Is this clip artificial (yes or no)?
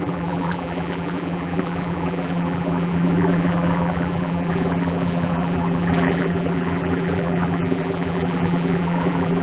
yes